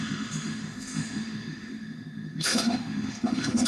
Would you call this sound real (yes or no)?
no